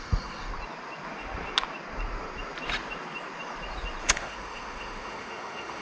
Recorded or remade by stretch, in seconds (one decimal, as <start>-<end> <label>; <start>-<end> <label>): 0.0-0.5 remade; 0.5-4.0 recorded; 4.0-5.8 remade